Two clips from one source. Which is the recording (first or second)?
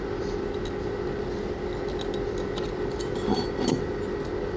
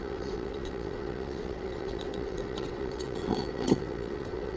first